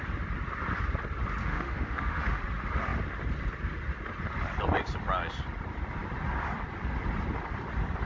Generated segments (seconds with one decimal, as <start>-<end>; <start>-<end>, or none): 1.4-2.4